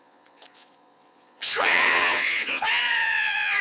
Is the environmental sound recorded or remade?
remade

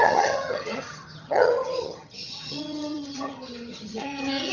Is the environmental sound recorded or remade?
remade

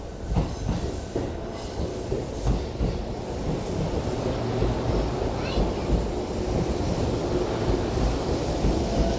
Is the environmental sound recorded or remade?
recorded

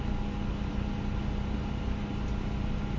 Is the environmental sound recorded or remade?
recorded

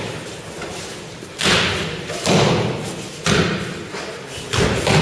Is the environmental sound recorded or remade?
recorded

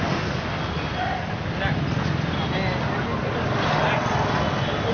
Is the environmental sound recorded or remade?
recorded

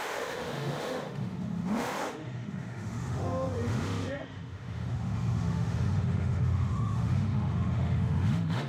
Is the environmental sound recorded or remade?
remade